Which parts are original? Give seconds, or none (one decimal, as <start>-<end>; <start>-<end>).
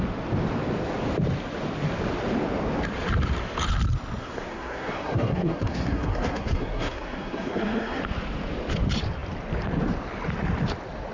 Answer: 0.0-4.2; 8.0-11.1